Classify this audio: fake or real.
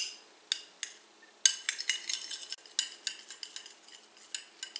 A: real